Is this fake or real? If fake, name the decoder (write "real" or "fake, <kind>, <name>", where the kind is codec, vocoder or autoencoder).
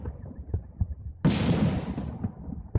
real